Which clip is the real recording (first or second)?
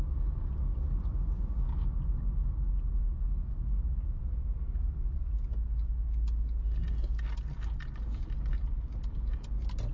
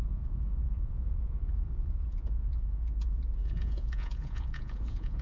first